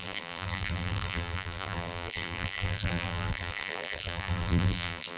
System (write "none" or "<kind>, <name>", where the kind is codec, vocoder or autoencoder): vocoder, BigVGAN v2